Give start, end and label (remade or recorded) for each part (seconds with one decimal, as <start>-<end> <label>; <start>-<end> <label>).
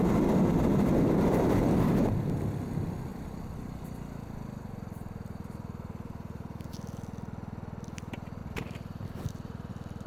0.0-3.1 recorded; 3.1-6.7 remade; 6.7-8.4 recorded; 8.4-9.7 remade; 9.7-10.1 recorded